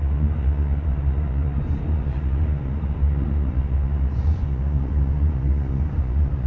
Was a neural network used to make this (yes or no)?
yes